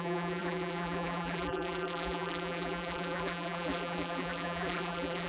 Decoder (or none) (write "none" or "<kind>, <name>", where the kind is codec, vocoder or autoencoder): vocoder, BigVGAN v2